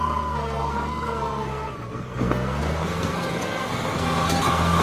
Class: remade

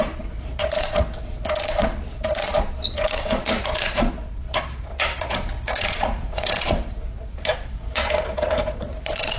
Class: remade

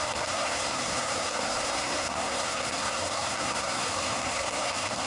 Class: remade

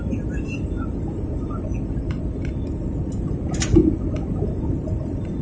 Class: recorded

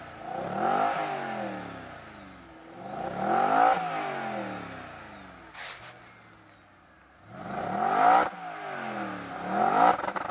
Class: recorded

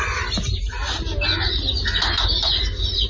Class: recorded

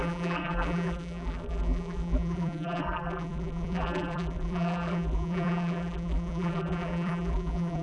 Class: remade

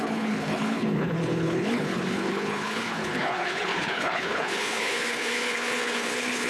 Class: remade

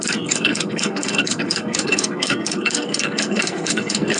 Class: remade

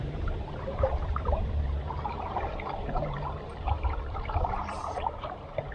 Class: remade